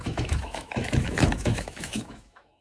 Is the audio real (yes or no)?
no